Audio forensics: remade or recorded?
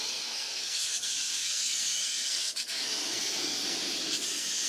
remade